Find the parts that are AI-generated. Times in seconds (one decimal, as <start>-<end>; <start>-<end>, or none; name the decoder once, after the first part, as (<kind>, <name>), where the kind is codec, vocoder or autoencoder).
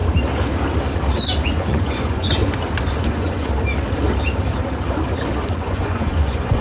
1.6-2.4 (vocoder, Vocos); 2.9-3.5; 5.5-6.6